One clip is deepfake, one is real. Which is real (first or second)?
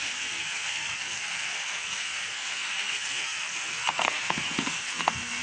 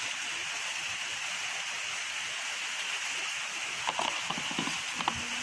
second